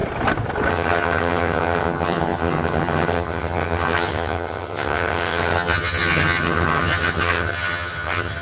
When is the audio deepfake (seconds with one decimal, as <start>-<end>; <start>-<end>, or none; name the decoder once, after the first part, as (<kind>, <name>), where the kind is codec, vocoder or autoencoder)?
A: 0.7-8.4 (vocoder, HiFi-GAN)

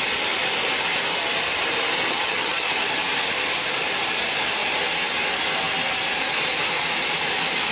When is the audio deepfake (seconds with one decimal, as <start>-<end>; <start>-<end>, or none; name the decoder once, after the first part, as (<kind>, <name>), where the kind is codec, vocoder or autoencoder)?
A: 2.1-2.7 (vocoder, HiFi-GAN)

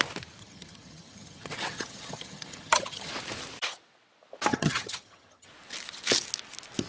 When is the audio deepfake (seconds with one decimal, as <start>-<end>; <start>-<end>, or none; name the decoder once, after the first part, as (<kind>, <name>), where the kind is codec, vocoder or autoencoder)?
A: 0.4-3.1 (vocoder, HiFi-GAN); 4.5-5.5

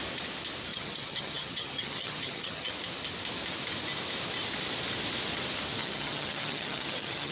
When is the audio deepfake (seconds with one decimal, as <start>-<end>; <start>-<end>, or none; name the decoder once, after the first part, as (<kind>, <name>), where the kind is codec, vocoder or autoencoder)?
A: 0.7-2.7 (vocoder, HiFi-GAN); 5.8-7.3

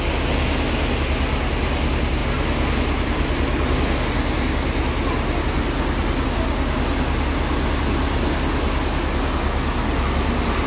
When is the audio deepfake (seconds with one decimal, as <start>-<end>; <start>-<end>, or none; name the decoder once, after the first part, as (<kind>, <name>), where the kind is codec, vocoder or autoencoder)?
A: none

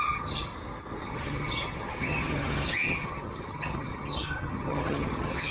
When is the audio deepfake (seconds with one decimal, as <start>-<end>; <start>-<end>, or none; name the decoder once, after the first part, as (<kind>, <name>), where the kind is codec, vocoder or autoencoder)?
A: 0.0-0.5 (vocoder, HiFi-GAN); 1.0-5.5